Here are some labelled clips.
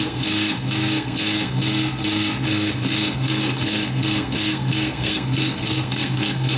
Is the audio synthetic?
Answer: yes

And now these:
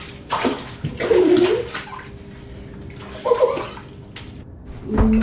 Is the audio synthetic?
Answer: no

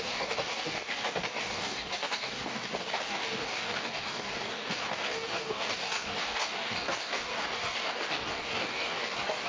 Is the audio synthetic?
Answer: yes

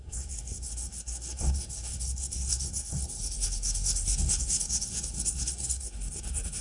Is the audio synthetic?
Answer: yes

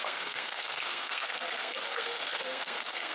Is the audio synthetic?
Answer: yes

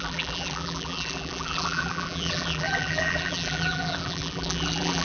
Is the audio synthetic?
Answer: yes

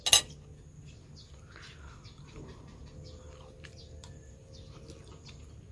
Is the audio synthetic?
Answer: no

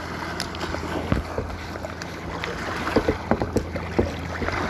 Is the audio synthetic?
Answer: no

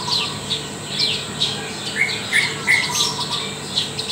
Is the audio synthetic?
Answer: no